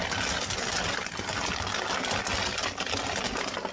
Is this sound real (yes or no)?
yes